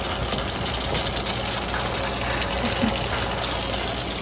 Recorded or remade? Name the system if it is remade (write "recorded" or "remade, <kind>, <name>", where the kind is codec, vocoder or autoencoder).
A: recorded